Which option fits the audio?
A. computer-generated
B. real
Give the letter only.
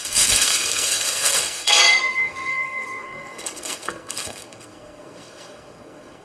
A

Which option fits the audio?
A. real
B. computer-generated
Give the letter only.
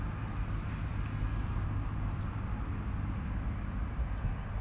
A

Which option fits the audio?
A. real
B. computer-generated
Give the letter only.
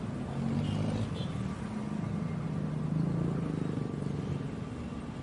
A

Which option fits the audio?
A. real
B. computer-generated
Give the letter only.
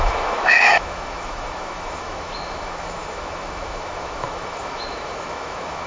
B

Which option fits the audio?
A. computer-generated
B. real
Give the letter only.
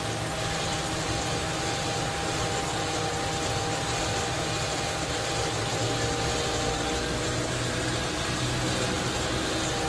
B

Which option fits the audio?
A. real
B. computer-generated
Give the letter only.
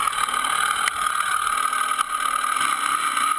A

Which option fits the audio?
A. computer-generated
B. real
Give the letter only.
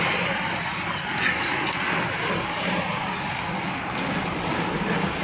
B